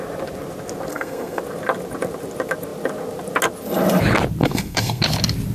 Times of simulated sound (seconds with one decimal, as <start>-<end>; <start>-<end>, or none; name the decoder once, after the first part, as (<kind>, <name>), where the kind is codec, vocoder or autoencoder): 0.9-1.4 (codec, SNAC); 4.4-5.0